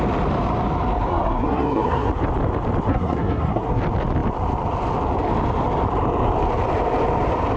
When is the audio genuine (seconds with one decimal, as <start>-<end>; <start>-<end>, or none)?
0.0-1.1; 2.1-2.9; 3.8-7.6